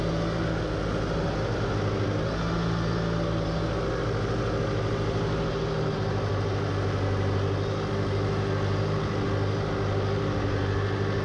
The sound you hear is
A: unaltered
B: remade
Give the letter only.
A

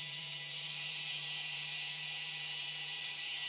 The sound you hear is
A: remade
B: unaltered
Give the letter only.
A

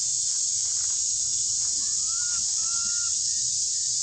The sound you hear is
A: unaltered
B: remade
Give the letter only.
A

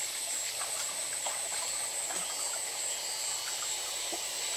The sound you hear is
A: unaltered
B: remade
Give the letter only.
A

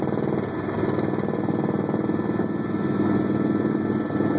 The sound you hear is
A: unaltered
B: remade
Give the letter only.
A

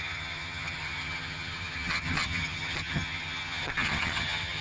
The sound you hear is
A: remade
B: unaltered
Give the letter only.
A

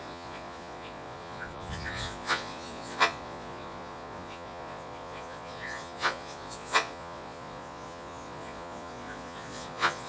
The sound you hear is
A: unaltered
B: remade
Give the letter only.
B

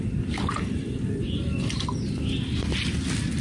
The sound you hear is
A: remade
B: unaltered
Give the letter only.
B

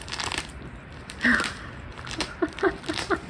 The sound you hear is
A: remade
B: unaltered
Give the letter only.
A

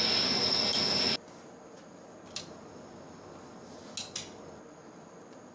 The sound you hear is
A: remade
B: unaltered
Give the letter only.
B